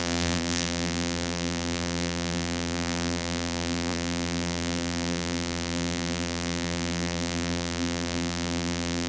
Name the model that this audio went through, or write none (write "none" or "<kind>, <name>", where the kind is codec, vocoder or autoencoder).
vocoder, BigVGAN v2